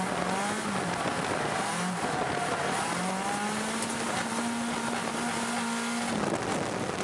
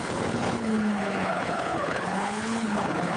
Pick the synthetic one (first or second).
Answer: second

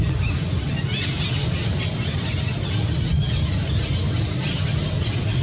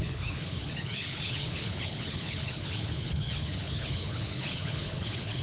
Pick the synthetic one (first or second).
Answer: second